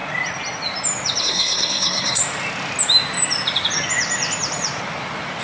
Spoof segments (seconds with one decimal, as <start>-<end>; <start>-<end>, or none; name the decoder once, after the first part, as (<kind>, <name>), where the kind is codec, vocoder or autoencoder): 1.2-2.2 (codec, SNAC)